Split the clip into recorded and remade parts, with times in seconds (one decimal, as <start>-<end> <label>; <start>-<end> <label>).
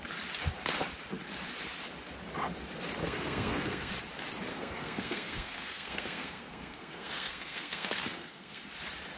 0.0-3.0 recorded; 3.0-3.9 remade; 3.9-4.5 recorded; 4.5-8.6 remade; 8.6-9.2 recorded